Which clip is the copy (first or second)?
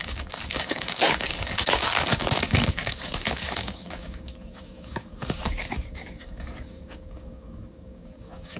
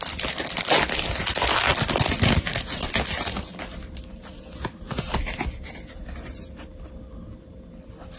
first